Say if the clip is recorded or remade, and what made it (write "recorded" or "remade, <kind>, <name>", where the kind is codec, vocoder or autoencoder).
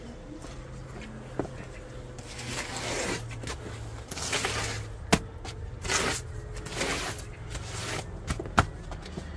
recorded